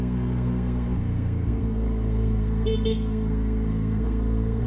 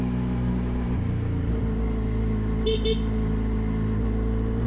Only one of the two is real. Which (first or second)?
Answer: second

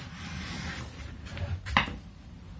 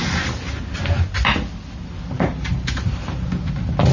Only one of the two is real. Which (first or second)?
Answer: second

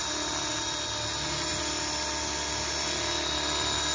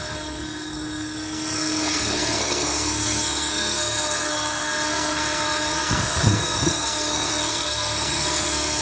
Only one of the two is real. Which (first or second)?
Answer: first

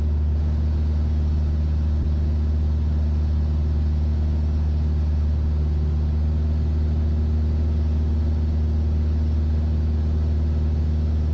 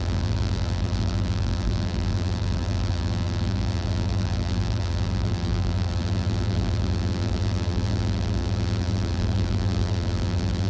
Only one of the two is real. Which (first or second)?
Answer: first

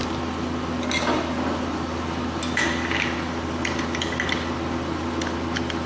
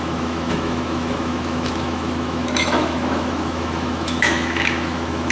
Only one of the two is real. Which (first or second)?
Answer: first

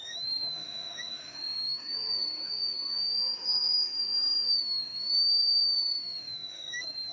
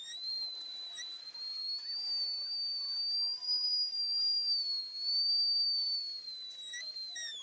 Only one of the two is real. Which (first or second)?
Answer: second